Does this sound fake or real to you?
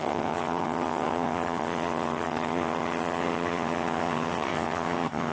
fake